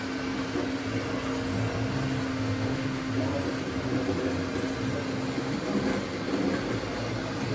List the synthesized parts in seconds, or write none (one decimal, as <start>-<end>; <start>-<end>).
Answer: 2.3-3.1